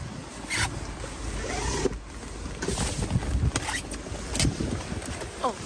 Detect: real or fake real